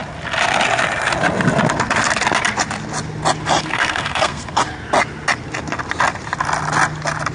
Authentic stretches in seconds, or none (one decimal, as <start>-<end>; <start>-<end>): 0.0-3.6; 4.6-7.3